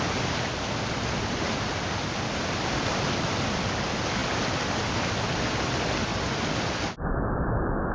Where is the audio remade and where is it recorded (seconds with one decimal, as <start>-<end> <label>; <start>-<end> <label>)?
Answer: 0.0-7.9 recorded